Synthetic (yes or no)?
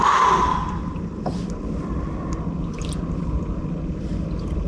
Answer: no